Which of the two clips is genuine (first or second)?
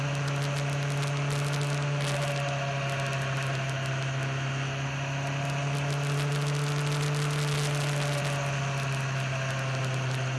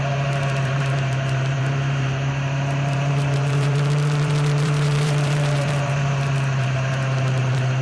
first